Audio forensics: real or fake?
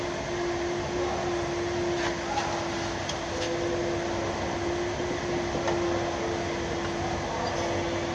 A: real